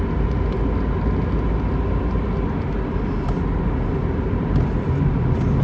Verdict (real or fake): real